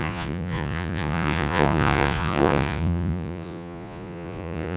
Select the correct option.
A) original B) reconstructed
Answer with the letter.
B